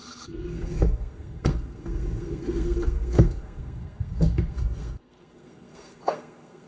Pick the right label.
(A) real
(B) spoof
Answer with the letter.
B